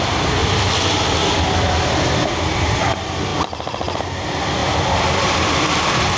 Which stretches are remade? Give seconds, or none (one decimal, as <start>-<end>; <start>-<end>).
0.4-1.2; 3.3-4.0; 4.6-5.8